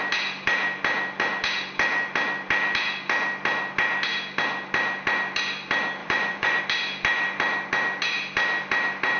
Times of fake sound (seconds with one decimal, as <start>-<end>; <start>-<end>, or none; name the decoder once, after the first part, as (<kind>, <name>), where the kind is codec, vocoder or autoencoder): 6.0-6.6 (vocoder, Vocos)